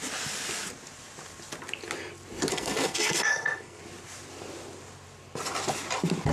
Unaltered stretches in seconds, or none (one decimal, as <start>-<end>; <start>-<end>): 0.0-2.5; 3.8-6.3